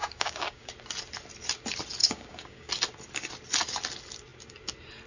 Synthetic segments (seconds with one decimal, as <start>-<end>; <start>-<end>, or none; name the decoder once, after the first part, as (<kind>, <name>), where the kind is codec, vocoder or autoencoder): 0.0-0.7 (codec, DAC); 2.0-2.7